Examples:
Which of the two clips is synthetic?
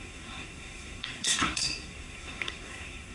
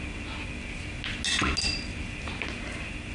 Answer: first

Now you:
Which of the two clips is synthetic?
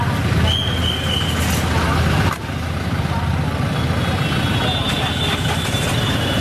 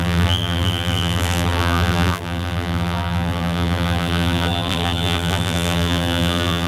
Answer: second